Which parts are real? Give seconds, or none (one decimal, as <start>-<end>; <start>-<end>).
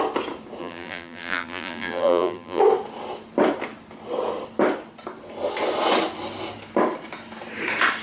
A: 0.0-0.6; 2.6-8.0